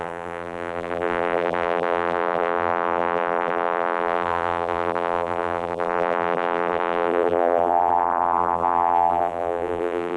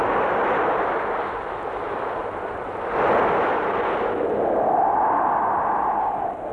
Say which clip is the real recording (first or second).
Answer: second